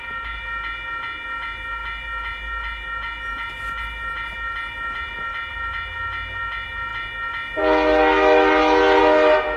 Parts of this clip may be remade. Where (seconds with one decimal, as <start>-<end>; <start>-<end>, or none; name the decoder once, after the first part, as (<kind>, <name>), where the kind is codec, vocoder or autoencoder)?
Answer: none